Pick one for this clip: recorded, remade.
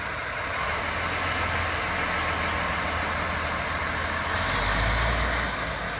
recorded